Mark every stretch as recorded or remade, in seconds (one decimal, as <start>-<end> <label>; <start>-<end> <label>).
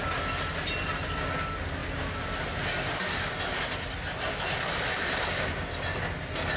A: 0.0-6.6 recorded